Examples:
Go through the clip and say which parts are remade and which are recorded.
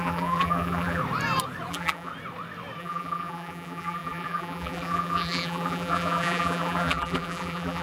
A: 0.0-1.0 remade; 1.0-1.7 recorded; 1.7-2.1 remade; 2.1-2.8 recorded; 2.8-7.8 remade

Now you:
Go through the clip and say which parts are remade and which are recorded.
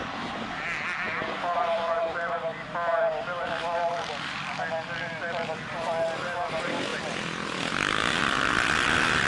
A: 0.0-6.9 remade; 6.9-8.2 recorded; 8.2-9.3 remade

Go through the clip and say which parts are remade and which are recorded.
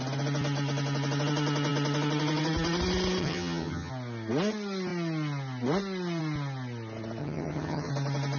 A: 0.0-3.2 recorded; 3.2-3.9 remade; 3.9-7.2 recorded; 7.2-7.9 remade; 7.9-8.4 recorded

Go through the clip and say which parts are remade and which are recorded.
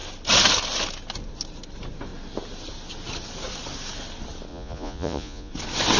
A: 0.0-4.5 recorded; 4.5-5.5 remade; 5.5-6.0 recorded